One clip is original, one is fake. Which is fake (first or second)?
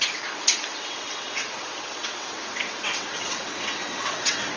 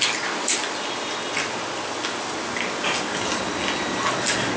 first